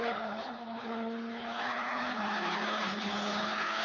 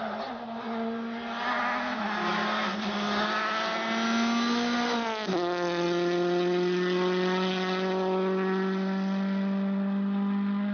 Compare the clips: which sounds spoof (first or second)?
first